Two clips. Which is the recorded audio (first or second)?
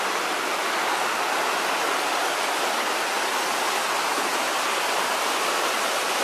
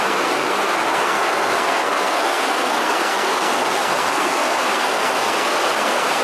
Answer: first